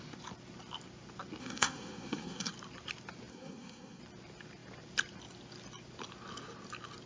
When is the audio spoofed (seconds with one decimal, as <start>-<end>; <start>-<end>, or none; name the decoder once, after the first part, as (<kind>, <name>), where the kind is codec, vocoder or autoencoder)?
1.4-2.5 (codec, SNAC); 3.3-4.0

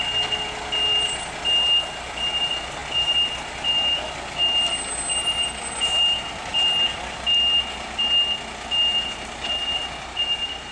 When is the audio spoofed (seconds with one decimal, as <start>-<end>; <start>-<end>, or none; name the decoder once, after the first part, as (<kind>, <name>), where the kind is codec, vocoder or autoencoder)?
none

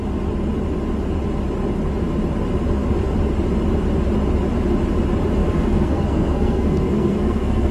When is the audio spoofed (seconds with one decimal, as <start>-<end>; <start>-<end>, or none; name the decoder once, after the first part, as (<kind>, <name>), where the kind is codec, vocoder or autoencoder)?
5.4-7.7 (codec, SNAC)

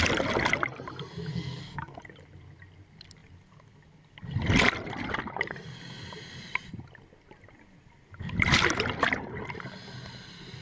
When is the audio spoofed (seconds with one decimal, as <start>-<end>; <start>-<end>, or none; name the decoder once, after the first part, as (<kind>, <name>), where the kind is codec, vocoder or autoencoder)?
1.3-2.0 (codec, SNAC)